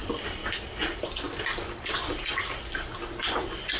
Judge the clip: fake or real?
real